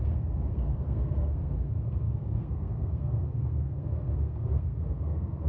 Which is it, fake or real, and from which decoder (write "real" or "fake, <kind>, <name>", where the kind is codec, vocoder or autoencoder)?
fake, codec, SNAC